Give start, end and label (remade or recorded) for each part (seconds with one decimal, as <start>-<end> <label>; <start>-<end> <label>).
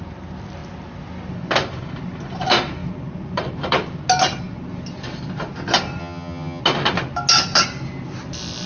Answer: 0.0-6.0 recorded; 6.0-6.6 remade; 6.6-8.7 recorded